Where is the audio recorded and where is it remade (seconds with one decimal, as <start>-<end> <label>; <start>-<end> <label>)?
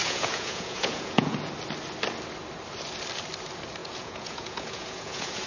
0.0-1.5 remade; 1.5-3.8 recorded; 3.8-5.5 remade